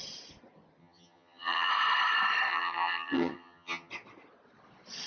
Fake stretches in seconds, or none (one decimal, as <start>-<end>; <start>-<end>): 0.8-1.7; 2.5-3.9